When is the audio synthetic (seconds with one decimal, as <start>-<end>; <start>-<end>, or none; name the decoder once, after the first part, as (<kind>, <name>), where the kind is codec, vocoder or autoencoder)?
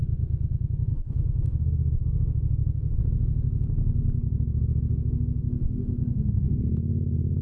0.9-3.0 (autoencoder, DAC-VAE); 4.9-6.6